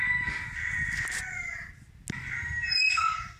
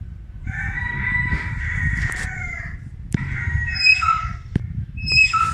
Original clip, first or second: first